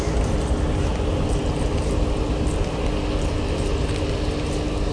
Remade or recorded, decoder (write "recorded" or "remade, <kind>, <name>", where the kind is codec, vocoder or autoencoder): recorded